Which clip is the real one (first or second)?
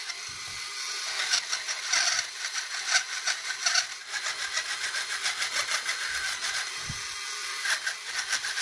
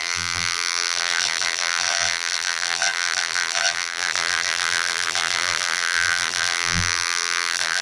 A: first